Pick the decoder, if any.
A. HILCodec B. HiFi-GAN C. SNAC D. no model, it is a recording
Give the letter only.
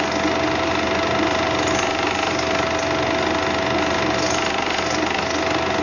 D